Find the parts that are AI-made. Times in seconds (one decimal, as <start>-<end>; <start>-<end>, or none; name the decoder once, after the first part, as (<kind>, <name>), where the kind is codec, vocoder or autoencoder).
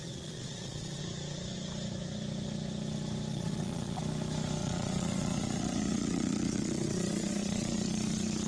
0.0-1.0 (vocoder, Vocos); 3.3-4.0; 4.6-7.9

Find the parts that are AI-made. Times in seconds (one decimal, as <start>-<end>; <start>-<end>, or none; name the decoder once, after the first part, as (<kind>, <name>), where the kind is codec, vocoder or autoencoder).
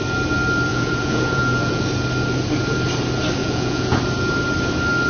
0.7-1.8 (vocoder, Vocos); 3.4-4.0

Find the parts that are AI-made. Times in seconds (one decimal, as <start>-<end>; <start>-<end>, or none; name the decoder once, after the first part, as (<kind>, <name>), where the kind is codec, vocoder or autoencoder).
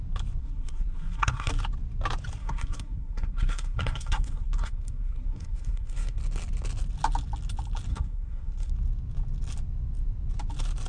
0.4-1.5 (codec, SNAC); 2.4-6.2; 7.9-8.7